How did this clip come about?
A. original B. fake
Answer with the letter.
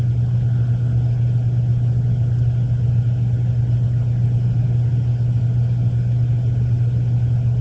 A